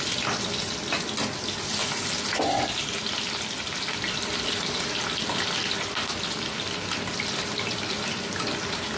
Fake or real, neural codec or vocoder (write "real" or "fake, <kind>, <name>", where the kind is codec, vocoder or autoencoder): real